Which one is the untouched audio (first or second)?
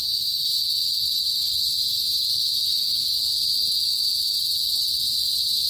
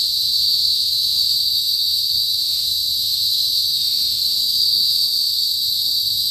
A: first